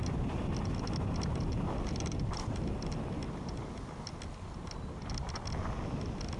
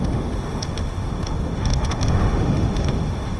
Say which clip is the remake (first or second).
second